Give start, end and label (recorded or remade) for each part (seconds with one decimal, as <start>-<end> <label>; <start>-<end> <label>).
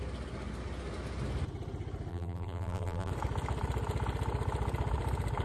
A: 0.0-2.1 recorded; 2.1-3.1 remade; 3.1-5.4 recorded